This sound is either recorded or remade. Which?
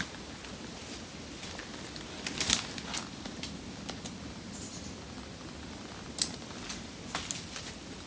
recorded